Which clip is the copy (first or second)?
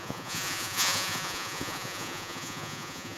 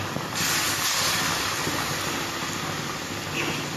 first